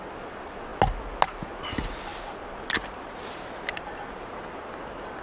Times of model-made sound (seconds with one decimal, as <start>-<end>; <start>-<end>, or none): none